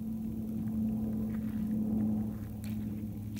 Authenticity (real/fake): real